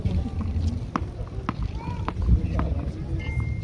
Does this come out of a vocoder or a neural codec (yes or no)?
no